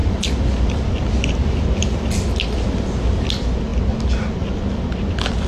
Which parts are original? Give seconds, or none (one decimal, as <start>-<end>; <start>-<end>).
0.0-5.5